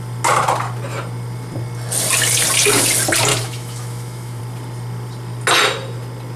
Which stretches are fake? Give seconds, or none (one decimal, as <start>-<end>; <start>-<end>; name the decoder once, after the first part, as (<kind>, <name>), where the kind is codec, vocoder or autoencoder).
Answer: 3.3-4.4 (autoencoder, DAC-VAE)